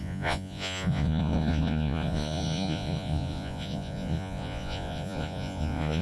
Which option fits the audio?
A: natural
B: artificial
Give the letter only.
B